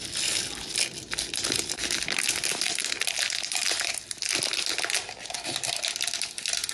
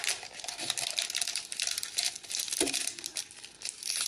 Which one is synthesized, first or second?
second